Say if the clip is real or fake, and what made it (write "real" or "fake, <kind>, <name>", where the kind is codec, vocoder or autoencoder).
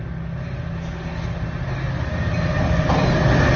real